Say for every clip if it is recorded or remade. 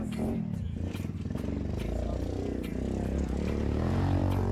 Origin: recorded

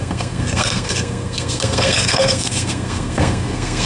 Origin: remade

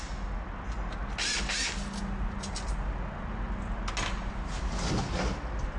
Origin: recorded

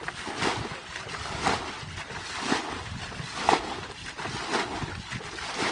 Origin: recorded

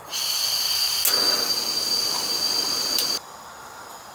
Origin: recorded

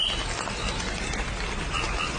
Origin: recorded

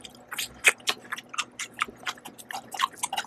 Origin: recorded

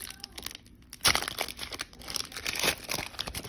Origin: recorded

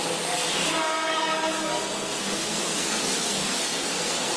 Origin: remade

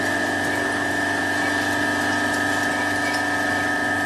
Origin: recorded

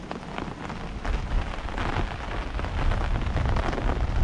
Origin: recorded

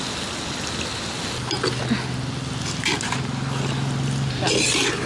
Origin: recorded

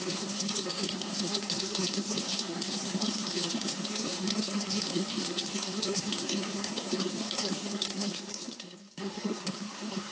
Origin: remade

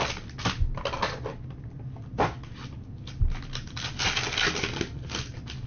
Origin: recorded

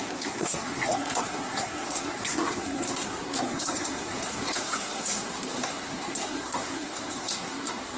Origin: remade